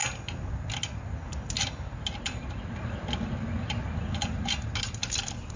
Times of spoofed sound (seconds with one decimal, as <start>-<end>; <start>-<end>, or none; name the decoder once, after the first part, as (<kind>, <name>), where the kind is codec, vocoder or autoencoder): none